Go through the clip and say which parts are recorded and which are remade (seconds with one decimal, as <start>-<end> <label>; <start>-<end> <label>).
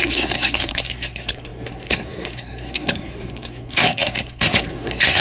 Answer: 0.0-5.2 remade